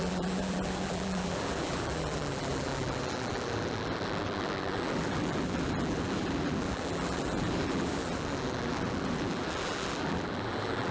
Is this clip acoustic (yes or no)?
no